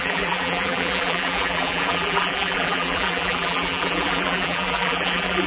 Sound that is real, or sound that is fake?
fake